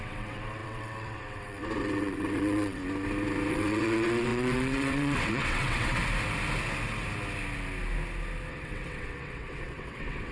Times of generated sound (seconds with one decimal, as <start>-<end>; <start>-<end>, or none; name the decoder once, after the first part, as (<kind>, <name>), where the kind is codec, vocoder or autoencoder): 0.0-2.8 (vocoder, WaveNeXt); 3.5-6.0; 8.5-10.3